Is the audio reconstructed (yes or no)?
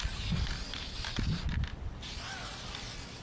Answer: no